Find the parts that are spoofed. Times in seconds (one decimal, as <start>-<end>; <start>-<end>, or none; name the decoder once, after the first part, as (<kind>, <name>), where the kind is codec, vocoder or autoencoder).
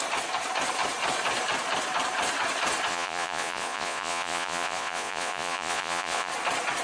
2.9-6.3 (vocoder, Vocos)